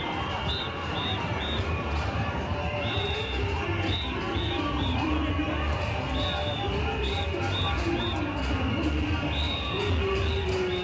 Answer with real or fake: real